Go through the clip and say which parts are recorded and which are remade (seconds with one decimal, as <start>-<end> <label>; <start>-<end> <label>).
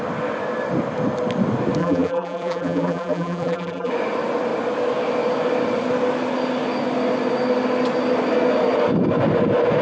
0.0-1.8 recorded; 1.8-3.9 remade; 3.9-9.8 recorded